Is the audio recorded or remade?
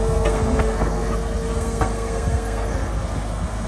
remade